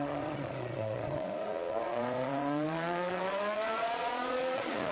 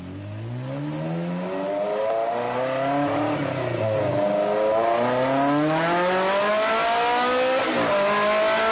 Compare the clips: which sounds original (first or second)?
second